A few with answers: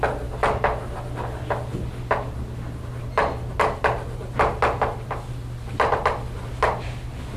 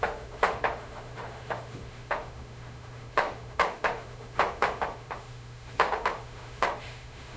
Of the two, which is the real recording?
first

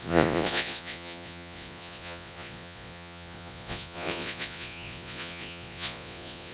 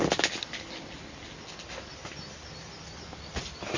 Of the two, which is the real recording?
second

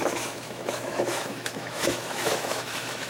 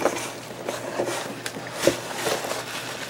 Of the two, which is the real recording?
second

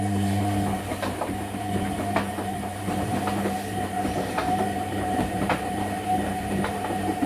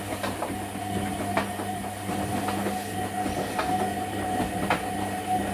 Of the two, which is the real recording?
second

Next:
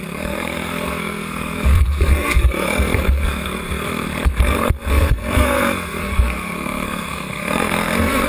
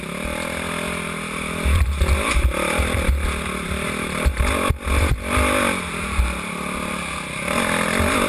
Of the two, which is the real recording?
second